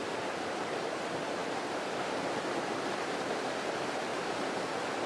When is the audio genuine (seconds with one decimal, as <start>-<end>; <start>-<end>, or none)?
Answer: 0.7-4.1; 4.6-5.1